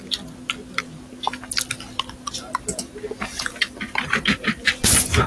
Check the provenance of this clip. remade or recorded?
recorded